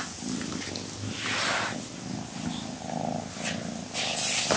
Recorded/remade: recorded